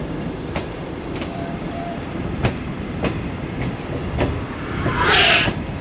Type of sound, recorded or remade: remade